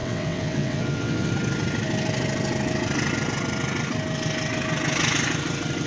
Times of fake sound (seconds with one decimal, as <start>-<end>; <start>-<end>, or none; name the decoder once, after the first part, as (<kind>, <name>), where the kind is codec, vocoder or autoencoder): 0.0-1.3 (vocoder, WaveNeXt)